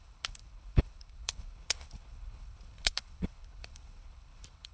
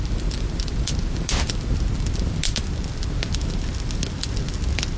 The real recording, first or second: second